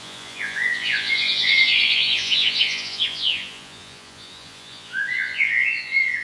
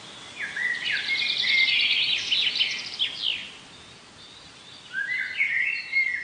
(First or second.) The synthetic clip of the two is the first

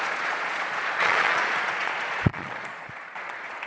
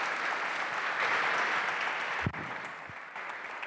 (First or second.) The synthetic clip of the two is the first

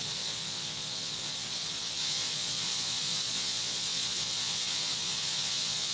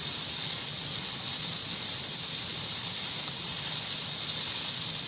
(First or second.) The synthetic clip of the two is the first